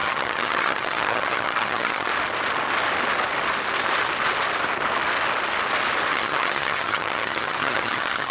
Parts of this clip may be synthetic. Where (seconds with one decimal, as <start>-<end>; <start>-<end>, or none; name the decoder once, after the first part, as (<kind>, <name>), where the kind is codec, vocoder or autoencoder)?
0.0-2.1 (vocoder, HiFi-GAN); 6.1-8.3